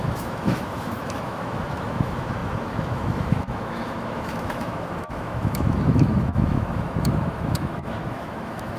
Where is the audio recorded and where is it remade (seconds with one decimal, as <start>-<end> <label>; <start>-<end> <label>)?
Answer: 0.0-8.8 remade